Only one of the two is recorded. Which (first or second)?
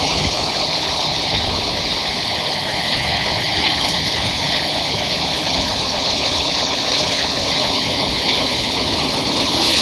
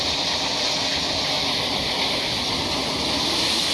second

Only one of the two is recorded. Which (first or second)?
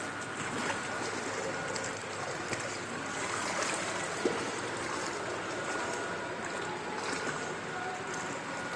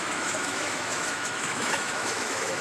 first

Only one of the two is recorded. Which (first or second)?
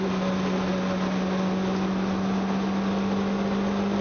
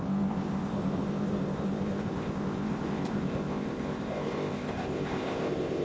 first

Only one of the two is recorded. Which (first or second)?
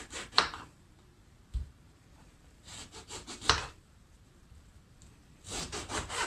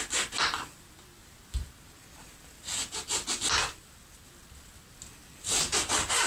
second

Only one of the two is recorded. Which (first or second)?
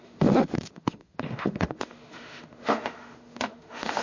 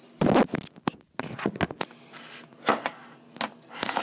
second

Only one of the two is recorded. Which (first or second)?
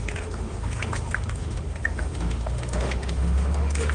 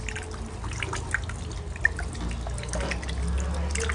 second